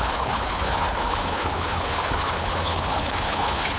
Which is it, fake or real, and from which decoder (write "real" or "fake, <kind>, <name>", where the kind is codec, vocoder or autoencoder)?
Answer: fake, codec, HILCodec